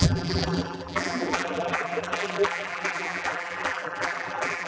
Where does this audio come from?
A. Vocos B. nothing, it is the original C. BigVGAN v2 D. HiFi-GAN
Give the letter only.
C